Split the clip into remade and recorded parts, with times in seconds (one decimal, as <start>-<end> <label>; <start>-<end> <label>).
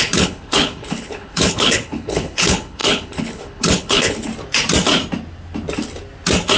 0.0-4.3 remade; 4.3-6.6 recorded